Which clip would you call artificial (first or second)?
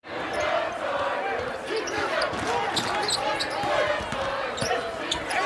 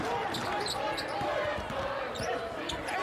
second